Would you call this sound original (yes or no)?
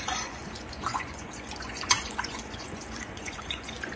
no